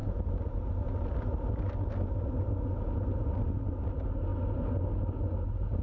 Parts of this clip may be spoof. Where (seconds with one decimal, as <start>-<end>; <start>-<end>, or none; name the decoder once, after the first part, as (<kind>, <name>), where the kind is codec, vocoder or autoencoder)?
none